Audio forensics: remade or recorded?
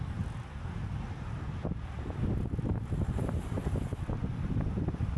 recorded